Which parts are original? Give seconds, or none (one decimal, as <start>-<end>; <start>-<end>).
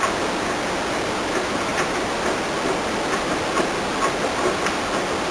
0.0-5.3